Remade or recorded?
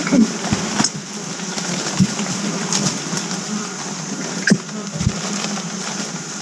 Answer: recorded